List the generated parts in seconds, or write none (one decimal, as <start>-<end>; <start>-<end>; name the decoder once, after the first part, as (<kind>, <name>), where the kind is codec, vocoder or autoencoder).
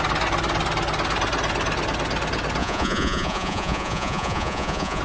2.6-5.0 (vocoder, Vocos)